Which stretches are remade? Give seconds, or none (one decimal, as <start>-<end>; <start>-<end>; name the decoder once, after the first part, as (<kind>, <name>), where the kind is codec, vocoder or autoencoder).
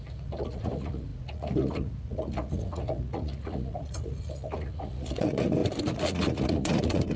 0.0-7.2 (vocoder, Vocos)